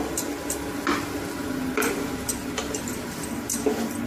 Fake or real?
real